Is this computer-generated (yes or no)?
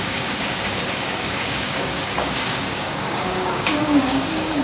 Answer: yes